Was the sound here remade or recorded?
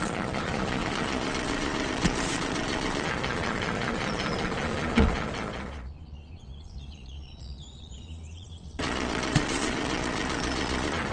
remade